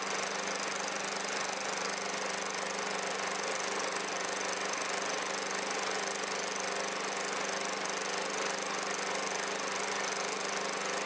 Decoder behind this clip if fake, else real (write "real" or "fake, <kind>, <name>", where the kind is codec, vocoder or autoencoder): real